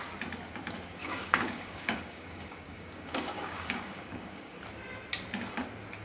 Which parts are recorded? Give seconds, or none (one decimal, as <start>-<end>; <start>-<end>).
0.0-1.0; 4.6-6.0